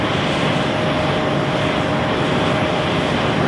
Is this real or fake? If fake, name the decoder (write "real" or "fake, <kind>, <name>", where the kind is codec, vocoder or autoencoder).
real